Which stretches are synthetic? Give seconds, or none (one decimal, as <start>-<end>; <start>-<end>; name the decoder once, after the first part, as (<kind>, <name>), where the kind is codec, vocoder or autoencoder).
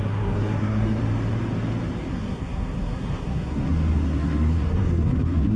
0.0-1.0 (codec, SNAC); 2.1-5.6